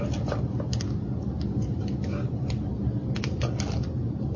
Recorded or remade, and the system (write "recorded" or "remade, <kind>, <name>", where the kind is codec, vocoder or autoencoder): recorded